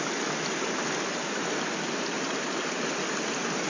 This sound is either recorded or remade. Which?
recorded